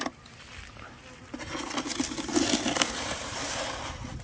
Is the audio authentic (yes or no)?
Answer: yes